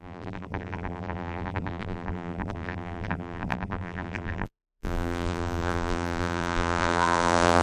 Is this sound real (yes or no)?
no